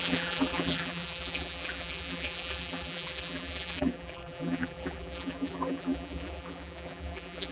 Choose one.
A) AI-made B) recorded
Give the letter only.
A